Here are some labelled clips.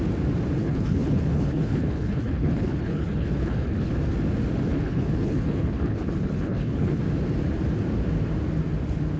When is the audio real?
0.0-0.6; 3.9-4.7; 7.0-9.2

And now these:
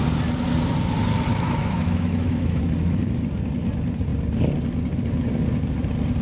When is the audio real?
0.0-1.3; 2.6-6.2

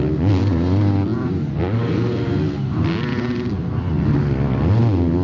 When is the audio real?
0.0-5.2

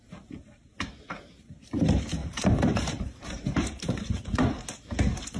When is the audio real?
0.0-2.2; 4.4-5.4

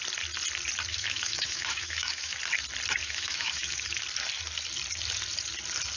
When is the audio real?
0.0-0.9; 2.4-3.0; 4.0-6.0

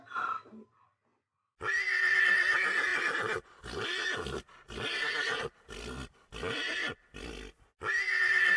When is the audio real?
0.0-8.6

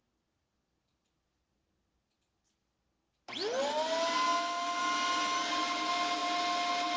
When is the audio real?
0.0-7.0

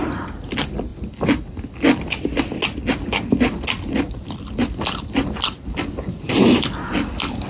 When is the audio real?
0.0-7.5